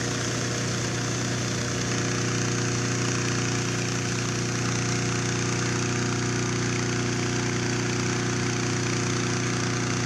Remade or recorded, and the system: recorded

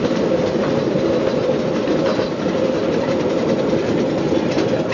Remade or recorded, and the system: recorded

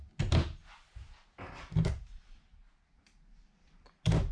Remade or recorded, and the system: recorded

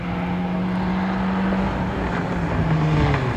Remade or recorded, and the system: recorded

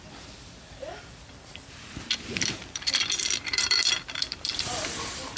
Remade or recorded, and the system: remade, vocoder, BigVGAN v2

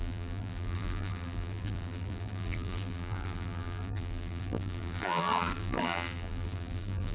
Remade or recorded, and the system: remade, vocoder, BigVGAN v2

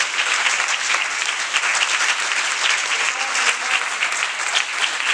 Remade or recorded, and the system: recorded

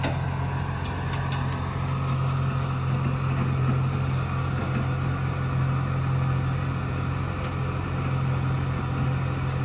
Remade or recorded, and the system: recorded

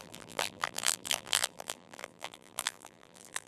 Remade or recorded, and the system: remade, vocoder, BigVGAN v2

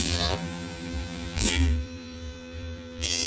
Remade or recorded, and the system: remade, vocoder, BigVGAN v2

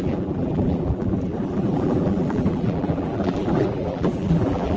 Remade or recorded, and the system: remade, vocoder, BigVGAN v2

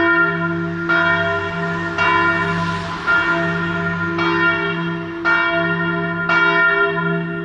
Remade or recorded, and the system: recorded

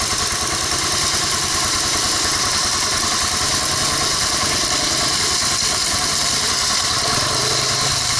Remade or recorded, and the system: recorded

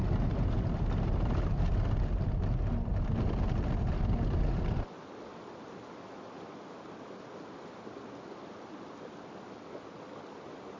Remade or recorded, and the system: recorded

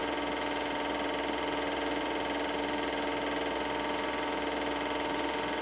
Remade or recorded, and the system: recorded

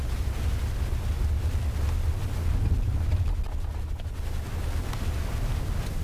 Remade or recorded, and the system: recorded